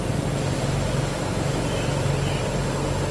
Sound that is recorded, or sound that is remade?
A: recorded